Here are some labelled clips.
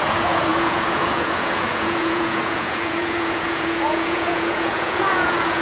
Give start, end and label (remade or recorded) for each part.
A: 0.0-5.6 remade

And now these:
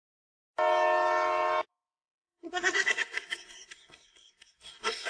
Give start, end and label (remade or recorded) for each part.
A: 0.0-1.7 recorded; 1.7-5.1 remade

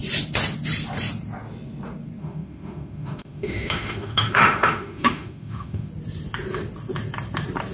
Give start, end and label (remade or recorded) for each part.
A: 0.0-2.2 recorded; 2.2-5.9 remade; 5.9-7.7 recorded

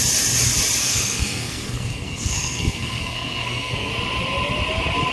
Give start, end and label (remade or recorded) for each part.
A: 0.0-0.8 recorded; 0.8-3.9 remade; 3.9-5.1 recorded

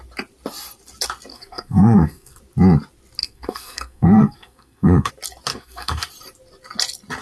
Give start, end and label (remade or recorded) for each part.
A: 0.0-1.3 recorded; 1.3-2.4 remade; 2.4-3.2 recorded; 3.2-5.1 remade; 5.1-5.5 recorded; 5.5-6.1 remade; 6.1-7.2 recorded

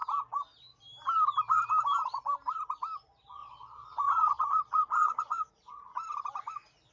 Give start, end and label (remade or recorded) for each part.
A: 0.0-3.4 recorded; 3.4-5.5 remade; 5.5-6.9 recorded